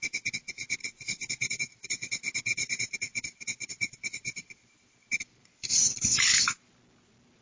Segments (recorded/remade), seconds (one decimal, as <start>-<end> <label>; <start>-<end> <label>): 0.0-0.8 recorded; 0.8-1.6 remade; 1.6-7.4 recorded